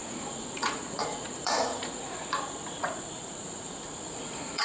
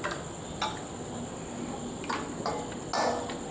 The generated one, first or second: first